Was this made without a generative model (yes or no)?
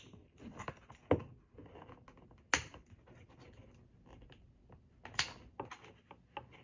yes